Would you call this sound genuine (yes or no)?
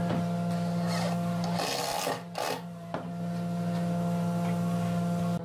yes